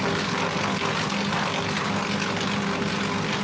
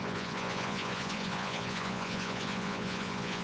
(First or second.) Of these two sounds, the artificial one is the second